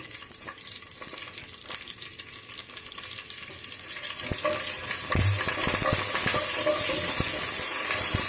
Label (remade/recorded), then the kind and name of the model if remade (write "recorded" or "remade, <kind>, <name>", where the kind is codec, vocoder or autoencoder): recorded